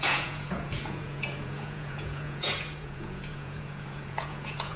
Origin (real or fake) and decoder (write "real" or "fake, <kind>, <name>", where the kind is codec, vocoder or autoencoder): fake, vocoder, Vocos